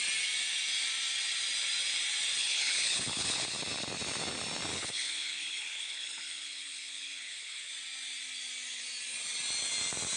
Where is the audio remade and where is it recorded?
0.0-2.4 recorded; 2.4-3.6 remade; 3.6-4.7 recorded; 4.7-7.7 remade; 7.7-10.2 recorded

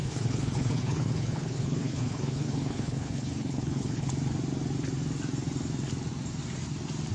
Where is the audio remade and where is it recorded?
0.0-4.1 remade; 4.1-7.1 recorded

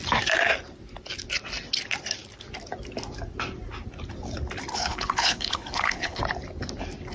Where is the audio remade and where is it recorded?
0.0-4.7 recorded; 4.7-6.2 remade; 6.2-7.1 recorded

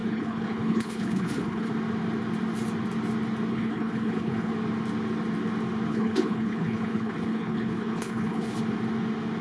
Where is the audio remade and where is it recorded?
0.0-1.7 remade; 1.7-3.5 recorded; 3.5-4.5 remade; 4.5-5.9 recorded; 5.9-8.6 remade; 8.6-9.4 recorded

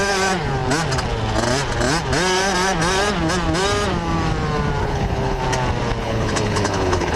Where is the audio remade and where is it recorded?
0.0-4.8 recorded; 4.8-5.4 remade; 5.4-6.0 recorded; 6.0-7.2 remade

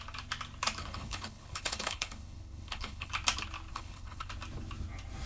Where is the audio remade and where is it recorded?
0.0-0.8 recorded; 0.8-3.1 remade; 3.1-3.7 recorded; 3.7-4.3 remade; 4.3-5.3 recorded

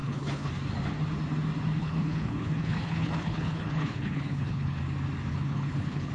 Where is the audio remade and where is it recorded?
0.0-0.5 remade; 0.5-1.8 recorded; 1.8-4.8 remade; 4.8-5.3 recorded; 5.3-6.1 remade

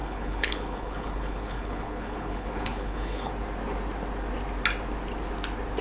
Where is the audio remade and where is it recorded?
0.0-3.3 remade; 3.3-5.8 recorded